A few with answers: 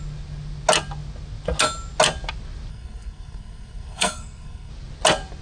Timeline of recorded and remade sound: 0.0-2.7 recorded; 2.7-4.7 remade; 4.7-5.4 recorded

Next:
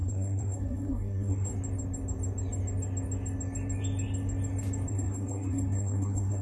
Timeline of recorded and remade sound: 0.0-1.5 remade; 1.5-4.9 recorded; 4.9-6.4 remade

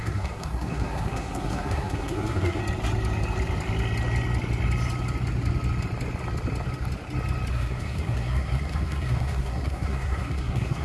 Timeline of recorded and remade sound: 0.0-2.6 remade; 2.6-7.5 recorded; 7.5-10.8 remade

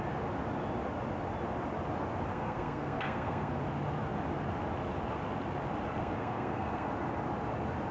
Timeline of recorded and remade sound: 0.0-2.3 recorded; 2.3-3.5 remade; 3.5-6.0 recorded; 6.0-6.9 remade; 6.9-7.9 recorded

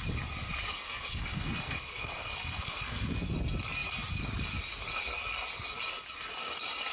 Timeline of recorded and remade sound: 0.0-0.7 recorded; 0.7-3.0 remade; 3.0-6.9 recorded

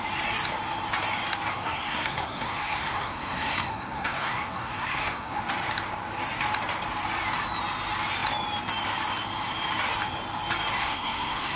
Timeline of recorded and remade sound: 0.0-1.5 recorded; 1.5-5.4 remade; 5.4-10.8 recorded; 10.8-11.6 remade